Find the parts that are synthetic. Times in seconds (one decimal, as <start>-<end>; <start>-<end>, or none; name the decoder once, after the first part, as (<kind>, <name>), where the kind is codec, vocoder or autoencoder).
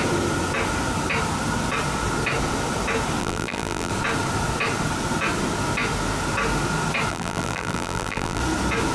3.2-3.9 (vocoder, BigVGAN v2); 7.1-8.4